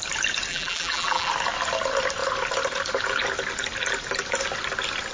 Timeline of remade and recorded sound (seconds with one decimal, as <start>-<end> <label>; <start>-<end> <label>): 0.0-0.5 recorded; 0.5-1.3 remade; 1.3-5.1 recorded